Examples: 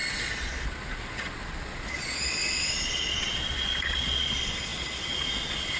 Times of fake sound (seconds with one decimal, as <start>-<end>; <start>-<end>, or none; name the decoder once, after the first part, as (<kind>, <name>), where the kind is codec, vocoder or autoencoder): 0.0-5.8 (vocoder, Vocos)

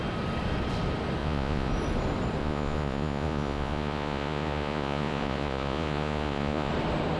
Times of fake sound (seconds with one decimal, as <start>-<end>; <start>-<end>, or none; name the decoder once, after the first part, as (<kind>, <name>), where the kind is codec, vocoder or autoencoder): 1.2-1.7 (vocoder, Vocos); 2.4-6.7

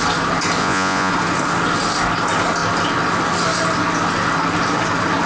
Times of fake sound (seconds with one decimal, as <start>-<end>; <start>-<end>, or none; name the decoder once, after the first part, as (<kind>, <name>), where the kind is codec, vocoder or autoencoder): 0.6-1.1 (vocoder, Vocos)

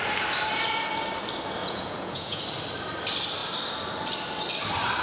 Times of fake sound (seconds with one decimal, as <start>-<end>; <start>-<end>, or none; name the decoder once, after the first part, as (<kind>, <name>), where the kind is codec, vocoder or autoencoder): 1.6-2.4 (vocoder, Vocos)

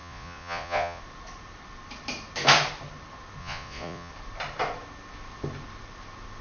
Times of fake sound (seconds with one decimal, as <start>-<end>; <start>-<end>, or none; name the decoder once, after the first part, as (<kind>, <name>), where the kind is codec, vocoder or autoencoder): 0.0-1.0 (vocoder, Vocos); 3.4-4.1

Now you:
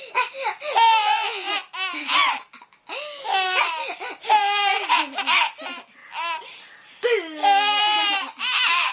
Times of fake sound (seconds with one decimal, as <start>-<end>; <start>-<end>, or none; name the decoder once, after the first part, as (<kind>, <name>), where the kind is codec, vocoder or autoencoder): 1.0-1.5 (vocoder, Vocos)

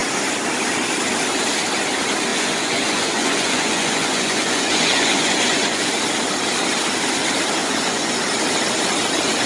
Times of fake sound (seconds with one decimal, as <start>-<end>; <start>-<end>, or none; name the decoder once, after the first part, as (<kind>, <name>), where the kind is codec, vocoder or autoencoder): 2.3-5.9 (vocoder, Vocos); 7.6-8.2